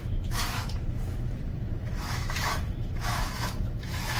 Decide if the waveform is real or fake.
fake